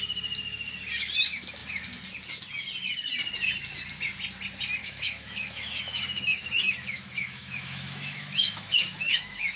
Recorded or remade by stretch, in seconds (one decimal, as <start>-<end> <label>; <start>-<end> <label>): 0.0-4.8 recorded; 4.8-9.6 remade